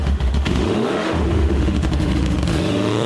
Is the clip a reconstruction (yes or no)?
yes